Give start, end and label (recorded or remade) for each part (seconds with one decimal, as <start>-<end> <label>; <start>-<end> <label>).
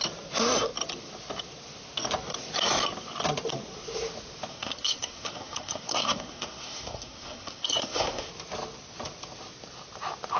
0.0-4.5 recorded; 4.5-8.3 remade; 8.3-10.4 recorded